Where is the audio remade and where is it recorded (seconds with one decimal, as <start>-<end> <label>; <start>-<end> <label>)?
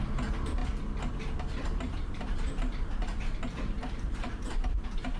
0.0-1.9 recorded; 1.9-5.2 remade